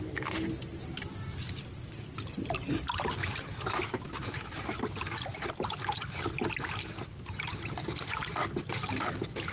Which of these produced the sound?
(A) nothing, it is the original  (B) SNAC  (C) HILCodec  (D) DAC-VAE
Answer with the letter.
A